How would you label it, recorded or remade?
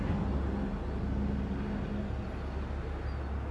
recorded